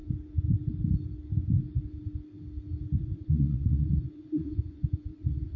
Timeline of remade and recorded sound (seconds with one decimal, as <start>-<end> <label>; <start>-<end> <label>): 0.0-3.0 recorded; 3.0-5.6 remade